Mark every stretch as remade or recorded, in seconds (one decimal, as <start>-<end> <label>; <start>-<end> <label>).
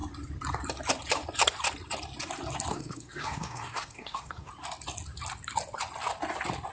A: 0.0-2.7 recorded; 2.7-4.5 remade; 4.5-6.7 recorded